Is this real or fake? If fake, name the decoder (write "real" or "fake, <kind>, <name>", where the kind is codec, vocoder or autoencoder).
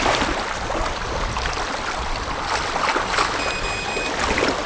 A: real